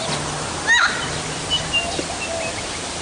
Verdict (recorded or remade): recorded